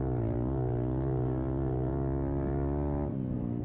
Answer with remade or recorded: recorded